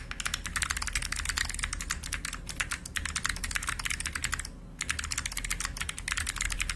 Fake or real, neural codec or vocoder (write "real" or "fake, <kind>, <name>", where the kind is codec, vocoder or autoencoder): real